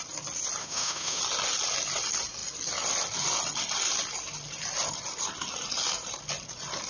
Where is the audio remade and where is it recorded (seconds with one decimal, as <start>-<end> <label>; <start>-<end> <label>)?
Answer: 0.0-0.6 recorded; 0.6-1.2 remade; 1.2-6.9 recorded